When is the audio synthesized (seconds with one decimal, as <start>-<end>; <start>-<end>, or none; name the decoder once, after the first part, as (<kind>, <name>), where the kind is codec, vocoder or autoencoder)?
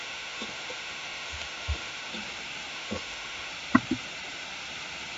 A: 0.0-2.1 (autoencoder, DAC-VAE); 2.7-3.5